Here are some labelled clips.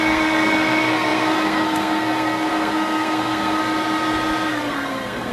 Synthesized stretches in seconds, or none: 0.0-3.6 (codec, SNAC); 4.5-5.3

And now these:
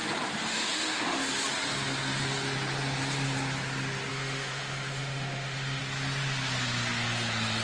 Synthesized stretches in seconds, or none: 0.5-1.3 (autoencoder, DAC-VAE); 4.1-5.8

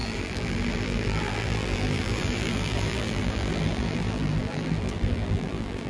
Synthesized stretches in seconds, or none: 0.0-5.9 (vocoder, BigVGAN v2)

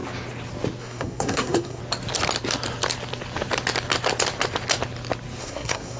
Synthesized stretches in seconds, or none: 0.8-1.8 (codec, SNAC); 5.4-6.0